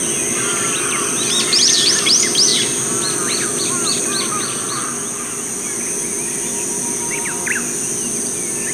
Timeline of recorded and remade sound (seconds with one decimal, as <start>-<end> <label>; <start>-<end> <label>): 0.0-0.5 recorded; 0.5-1.9 remade; 1.9-8.7 recorded